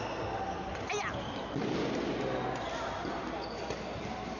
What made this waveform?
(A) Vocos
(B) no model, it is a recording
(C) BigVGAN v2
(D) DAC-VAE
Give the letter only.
B